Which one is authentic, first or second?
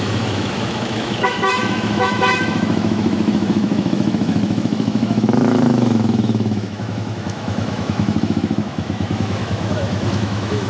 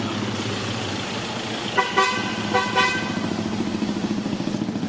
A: second